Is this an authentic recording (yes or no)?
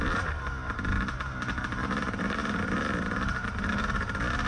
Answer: yes